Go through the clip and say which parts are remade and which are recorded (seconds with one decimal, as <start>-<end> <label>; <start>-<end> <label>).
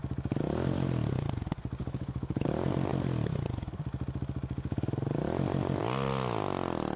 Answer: 0.0-1.8 recorded; 1.8-2.5 remade; 2.5-7.0 recorded